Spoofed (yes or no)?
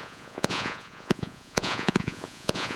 yes